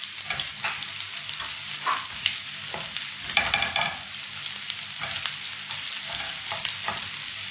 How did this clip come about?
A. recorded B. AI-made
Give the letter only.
A